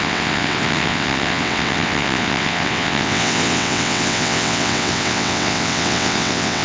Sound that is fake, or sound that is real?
fake